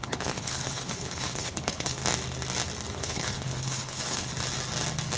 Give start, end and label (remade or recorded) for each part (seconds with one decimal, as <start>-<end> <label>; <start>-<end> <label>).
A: 0.0-2.0 remade; 2.0-2.9 recorded; 2.9-4.3 remade; 4.3-5.2 recorded